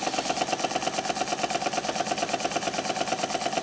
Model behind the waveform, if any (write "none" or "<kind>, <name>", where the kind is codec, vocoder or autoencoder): none